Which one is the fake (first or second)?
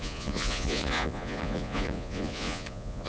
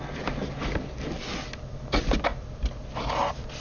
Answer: first